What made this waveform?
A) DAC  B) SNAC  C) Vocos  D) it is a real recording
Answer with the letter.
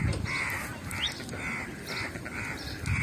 D